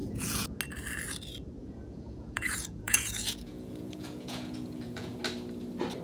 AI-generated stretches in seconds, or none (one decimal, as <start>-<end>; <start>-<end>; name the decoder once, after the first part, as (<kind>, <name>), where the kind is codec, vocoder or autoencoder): 0.0-0.6 (vocoder, Vocos); 1.6-5.2